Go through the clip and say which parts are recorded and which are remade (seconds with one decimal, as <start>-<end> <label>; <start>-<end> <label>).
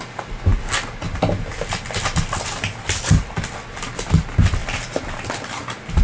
0.0-6.0 recorded